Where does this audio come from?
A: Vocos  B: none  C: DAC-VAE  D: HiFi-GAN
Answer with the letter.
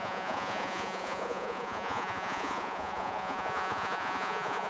A